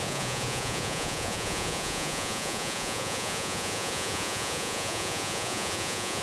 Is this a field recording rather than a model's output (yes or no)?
no